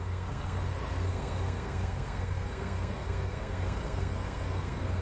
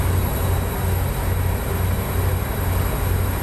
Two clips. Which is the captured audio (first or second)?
second